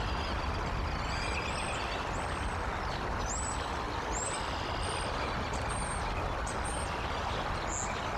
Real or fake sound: real